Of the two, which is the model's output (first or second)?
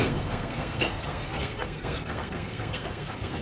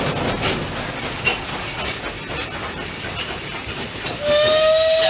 first